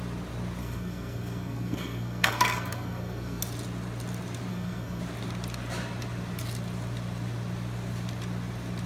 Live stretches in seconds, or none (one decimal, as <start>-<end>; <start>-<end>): 0.0-0.6; 3.4-4.5; 5.0-8.9